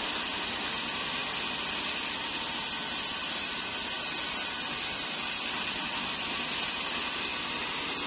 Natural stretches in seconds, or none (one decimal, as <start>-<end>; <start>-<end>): 0.0-8.1